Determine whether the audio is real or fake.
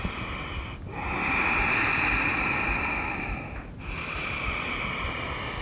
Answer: real